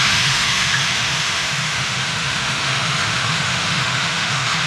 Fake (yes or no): yes